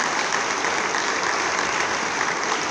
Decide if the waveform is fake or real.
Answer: real